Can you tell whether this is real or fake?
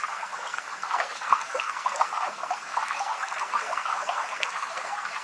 fake